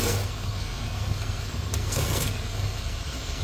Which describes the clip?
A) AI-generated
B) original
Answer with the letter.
A